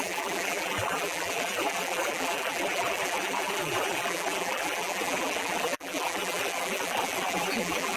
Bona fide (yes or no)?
no